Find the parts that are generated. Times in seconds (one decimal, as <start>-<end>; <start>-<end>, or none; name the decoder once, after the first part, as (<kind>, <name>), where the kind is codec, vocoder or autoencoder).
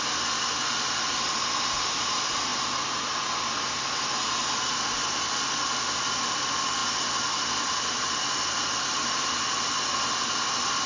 none